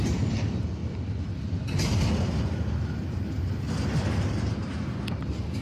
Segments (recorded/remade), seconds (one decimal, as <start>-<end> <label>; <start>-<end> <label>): 0.0-0.8 remade; 0.8-4.2 recorded; 4.2-5.6 remade